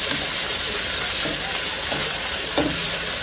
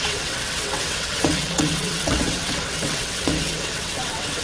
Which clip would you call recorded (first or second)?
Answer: first